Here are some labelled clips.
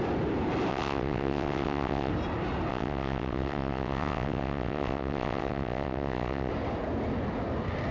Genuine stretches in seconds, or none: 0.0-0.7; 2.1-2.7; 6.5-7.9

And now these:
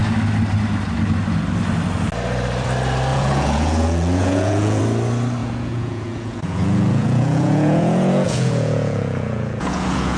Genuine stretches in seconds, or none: 0.0-3.1; 4.8-5.4

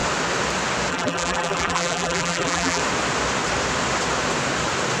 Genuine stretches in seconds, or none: 0.0-0.9; 2.8-5.0

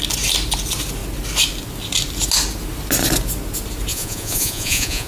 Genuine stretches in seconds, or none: 0.0-3.9

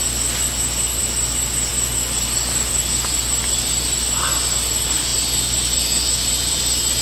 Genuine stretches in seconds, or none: 0.0-7.0

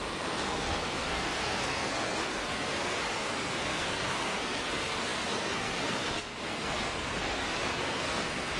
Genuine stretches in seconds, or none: none

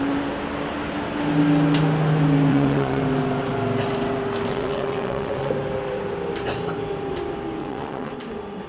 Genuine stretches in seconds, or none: 0.0-2.5; 3.0-4.5; 5.5-7.6; 8.1-8.7